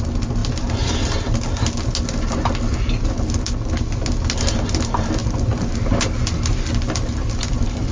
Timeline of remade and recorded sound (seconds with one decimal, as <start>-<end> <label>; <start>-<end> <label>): 0.0-7.9 recorded